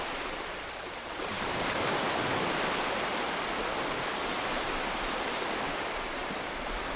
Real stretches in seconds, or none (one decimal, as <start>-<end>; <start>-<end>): 1.3-4.8